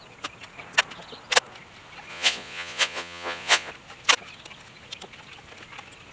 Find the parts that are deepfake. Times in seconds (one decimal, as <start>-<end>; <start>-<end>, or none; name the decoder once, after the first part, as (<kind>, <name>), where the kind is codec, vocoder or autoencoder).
2.1-3.7 (vocoder, Vocos)